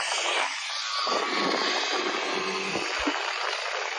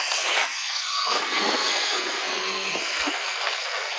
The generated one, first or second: second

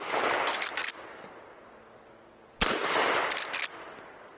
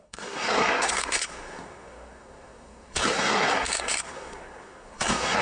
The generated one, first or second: second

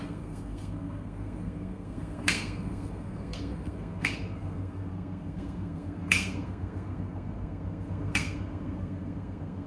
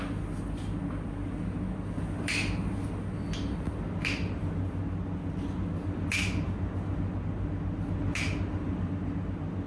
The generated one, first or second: first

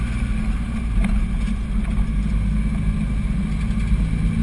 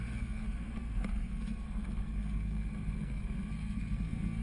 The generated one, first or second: second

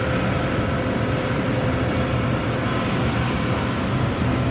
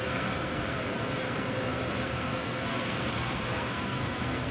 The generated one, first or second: second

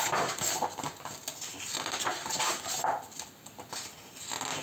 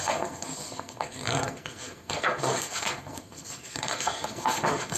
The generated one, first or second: second